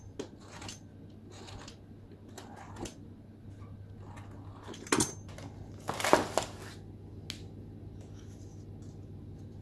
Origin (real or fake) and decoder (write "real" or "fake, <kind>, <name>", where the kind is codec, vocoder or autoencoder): real